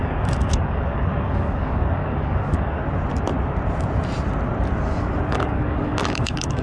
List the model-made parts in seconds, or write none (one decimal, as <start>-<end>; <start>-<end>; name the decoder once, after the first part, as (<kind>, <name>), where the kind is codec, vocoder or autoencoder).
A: 0.0-2.8 (codec, DAC); 5.3-6.6